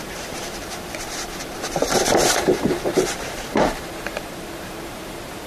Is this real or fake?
fake